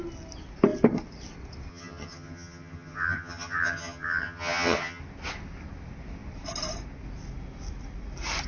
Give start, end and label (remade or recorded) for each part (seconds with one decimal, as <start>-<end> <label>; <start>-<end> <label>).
0.0-1.7 recorded; 1.7-5.0 remade; 5.0-8.5 recorded